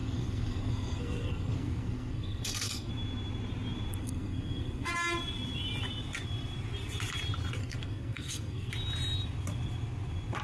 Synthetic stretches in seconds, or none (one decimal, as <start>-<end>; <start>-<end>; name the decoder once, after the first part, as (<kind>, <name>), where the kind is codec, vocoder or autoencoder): 0.0-2.9 (codec, SNAC); 4.0-4.9; 7.6-8.7

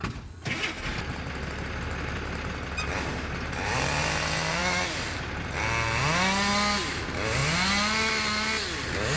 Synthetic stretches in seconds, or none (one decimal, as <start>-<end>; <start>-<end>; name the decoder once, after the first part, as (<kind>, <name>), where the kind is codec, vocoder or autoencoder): none

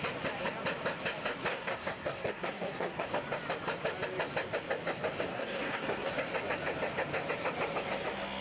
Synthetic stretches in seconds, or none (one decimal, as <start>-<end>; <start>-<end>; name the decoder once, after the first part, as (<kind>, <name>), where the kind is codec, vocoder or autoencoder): 1.5-3.1 (codec, SNAC); 5.3-6.1

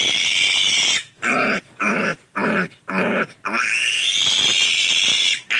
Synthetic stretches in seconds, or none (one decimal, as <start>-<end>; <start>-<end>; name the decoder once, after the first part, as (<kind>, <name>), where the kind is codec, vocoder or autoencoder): none

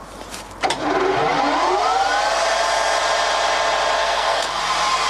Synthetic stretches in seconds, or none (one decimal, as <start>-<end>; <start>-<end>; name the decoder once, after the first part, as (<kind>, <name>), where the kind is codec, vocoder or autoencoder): 4.0-4.6 (codec, SNAC)

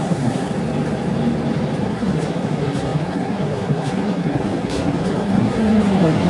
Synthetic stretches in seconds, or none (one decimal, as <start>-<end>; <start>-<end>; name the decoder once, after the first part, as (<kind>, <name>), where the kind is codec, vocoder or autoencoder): 0.0-0.5 (codec, SNAC); 1.8-6.3

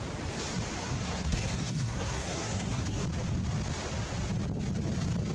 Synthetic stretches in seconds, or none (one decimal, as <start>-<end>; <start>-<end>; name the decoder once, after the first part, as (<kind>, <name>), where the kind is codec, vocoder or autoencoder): 0.8-3.0 (codec, SNAC)

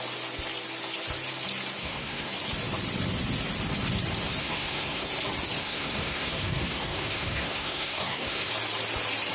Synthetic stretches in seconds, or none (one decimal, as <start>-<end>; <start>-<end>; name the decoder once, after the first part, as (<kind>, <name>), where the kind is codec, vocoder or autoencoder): 1.8-2.3 (codec, SNAC); 4.4-5.1; 5.6-8.5